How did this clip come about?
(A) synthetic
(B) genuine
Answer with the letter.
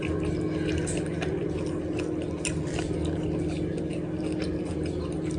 B